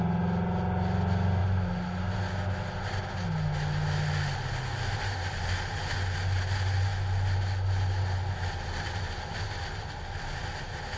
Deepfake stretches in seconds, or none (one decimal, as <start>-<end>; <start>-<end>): none